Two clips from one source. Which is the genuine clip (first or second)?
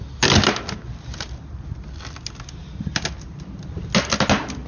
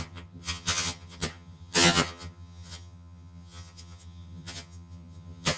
first